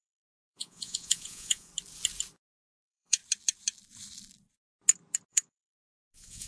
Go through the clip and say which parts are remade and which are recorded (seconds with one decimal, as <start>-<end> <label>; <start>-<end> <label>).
0.0-1.7 remade; 1.7-2.4 recorded; 2.4-3.2 remade; 3.2-5.3 recorded; 5.3-6.5 remade